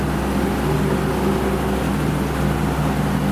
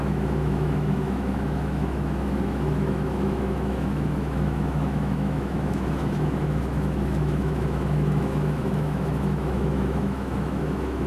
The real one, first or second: first